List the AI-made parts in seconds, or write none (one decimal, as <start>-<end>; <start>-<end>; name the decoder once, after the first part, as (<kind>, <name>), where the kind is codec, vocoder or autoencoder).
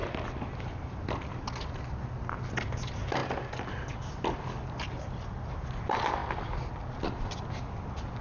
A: none